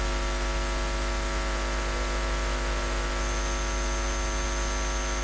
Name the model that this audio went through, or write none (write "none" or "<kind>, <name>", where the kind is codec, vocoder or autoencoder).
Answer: none